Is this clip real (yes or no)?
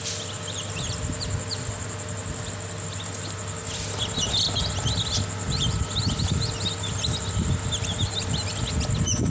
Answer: yes